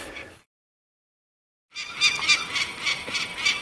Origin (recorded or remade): recorded